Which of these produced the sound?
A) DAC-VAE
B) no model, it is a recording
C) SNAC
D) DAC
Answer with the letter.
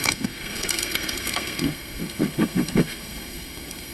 C